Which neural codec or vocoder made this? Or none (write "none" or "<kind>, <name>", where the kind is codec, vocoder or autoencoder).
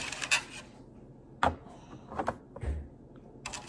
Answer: none